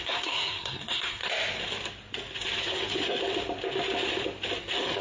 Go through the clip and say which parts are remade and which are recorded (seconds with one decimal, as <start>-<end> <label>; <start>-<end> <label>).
0.0-1.2 remade; 1.2-2.6 recorded; 2.6-3.2 remade; 3.2-4.6 recorded; 4.6-5.0 remade